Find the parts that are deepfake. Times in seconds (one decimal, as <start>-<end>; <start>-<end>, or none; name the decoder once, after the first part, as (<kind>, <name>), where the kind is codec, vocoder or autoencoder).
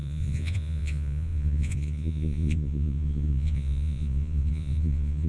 0.0-5.3 (vocoder, Vocos)